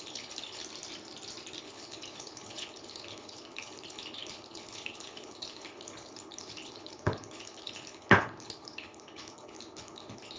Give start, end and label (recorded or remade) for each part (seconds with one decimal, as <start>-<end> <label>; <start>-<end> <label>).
0.0-0.6 remade; 0.6-1.6 recorded; 1.6-10.4 remade